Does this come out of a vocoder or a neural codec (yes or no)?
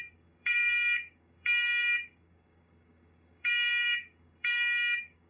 yes